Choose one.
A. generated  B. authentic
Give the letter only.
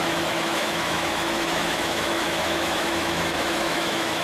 A